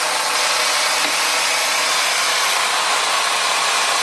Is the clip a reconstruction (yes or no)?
no